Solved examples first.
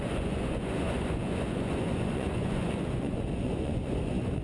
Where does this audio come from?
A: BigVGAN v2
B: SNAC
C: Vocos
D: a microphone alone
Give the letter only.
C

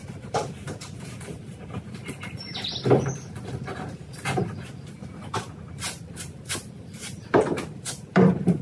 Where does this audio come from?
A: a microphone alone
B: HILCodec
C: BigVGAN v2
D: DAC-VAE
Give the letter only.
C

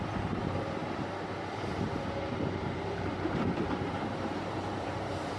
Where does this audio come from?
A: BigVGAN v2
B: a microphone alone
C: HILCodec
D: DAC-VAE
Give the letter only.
A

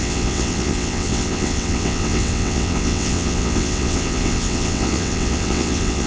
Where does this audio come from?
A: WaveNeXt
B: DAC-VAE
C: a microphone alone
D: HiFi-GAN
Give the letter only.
A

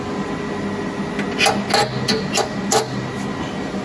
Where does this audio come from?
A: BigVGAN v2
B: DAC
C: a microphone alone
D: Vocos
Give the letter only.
C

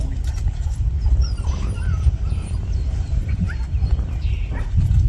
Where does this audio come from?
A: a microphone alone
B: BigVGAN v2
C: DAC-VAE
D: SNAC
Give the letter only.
A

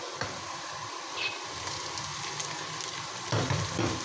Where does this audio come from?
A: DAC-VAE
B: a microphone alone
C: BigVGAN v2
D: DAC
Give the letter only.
B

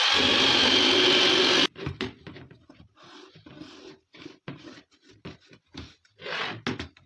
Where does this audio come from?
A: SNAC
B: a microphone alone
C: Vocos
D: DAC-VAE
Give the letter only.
B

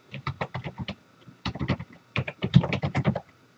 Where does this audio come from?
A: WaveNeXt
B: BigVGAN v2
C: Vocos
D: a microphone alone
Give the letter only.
B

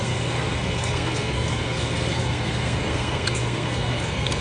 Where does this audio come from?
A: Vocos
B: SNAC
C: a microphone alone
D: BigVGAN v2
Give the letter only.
B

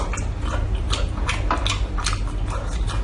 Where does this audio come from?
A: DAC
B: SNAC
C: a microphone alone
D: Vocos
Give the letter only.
C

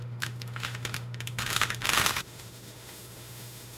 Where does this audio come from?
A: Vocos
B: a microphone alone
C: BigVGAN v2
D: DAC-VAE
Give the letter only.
D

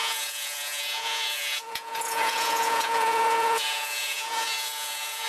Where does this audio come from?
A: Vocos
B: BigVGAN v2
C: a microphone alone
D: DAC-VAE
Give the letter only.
A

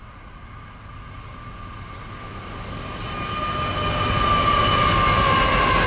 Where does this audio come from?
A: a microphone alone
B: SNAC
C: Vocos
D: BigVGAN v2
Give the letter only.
A